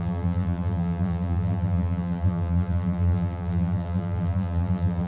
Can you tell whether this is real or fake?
fake